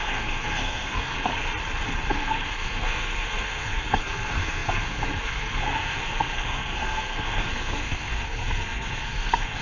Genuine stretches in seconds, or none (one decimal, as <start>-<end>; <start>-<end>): 1.3-2.1